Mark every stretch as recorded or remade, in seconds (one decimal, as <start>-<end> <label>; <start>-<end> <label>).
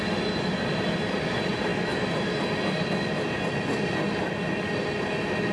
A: 0.0-5.5 recorded